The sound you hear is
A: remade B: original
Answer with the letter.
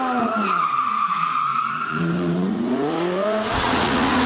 A